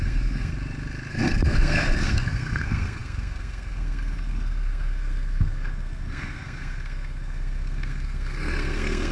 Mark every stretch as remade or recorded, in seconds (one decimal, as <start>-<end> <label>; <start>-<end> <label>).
0.0-0.5 remade; 0.5-1.1 recorded; 1.1-9.1 remade